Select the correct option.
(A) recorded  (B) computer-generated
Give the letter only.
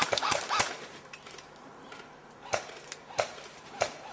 A